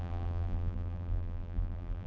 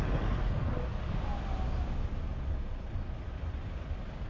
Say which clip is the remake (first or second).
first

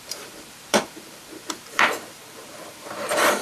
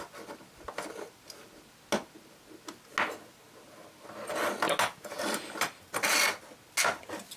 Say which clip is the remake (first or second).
first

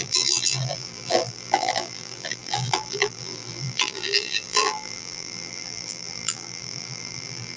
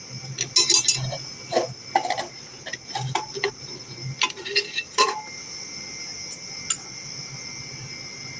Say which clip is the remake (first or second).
first